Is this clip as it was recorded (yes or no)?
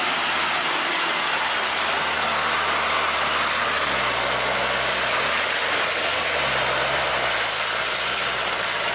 yes